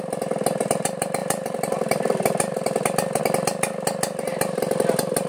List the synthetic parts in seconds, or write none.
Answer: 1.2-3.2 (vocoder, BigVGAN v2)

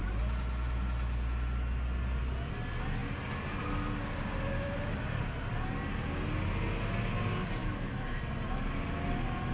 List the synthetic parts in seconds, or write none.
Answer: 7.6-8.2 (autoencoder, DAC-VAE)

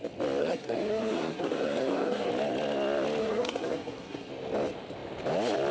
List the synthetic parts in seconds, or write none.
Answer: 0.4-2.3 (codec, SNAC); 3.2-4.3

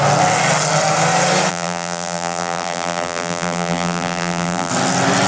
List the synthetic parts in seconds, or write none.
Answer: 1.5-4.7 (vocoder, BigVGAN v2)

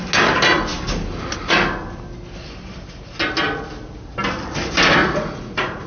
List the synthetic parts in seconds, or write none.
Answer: 5.0-5.9 (vocoder, Vocos)

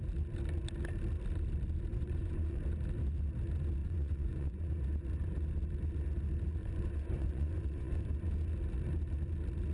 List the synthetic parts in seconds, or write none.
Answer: 1.9-2.6 (vocoder, Vocos); 3.8-4.7; 6.6-8.1